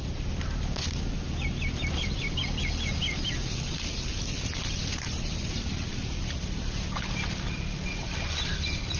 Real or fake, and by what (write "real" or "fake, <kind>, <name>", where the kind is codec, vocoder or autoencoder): real